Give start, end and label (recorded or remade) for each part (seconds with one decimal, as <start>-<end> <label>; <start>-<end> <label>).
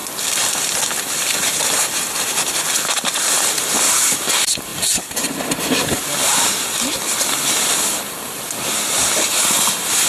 0.0-4.1 remade; 4.1-4.7 recorded; 4.7-5.3 remade; 5.3-6.3 recorded; 6.3-7.7 remade; 7.7-10.1 recorded